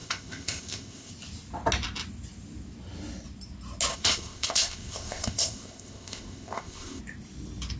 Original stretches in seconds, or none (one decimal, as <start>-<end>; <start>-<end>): 1.1-3.9; 7.0-7.8

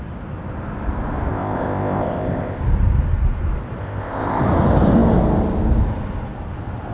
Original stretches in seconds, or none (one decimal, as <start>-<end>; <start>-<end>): 0.0-1.3; 2.6-3.8; 4.4-6.9

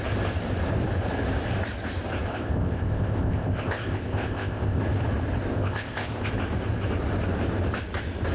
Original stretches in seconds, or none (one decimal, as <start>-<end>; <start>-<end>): 0.0-2.3; 4.8-5.5; 6.3-8.3

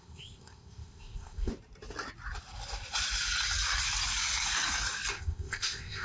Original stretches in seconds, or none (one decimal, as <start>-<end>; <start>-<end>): 1.5-5.1

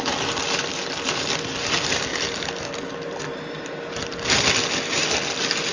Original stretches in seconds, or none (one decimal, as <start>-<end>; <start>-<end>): 0.0-5.7